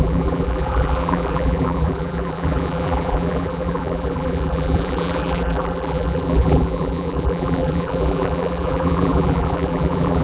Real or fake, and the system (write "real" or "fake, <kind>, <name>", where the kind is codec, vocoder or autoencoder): fake, vocoder, BigVGAN v2